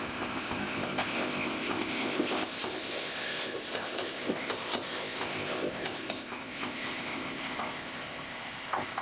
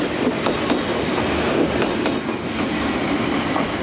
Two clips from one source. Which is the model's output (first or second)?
first